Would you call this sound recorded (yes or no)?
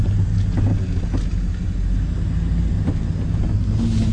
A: yes